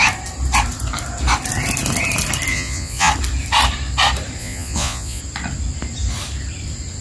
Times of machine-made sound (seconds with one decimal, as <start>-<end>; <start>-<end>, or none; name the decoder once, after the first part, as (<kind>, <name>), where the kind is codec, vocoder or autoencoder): 2.5-3.1 (vocoder, Vocos); 4.4-5.2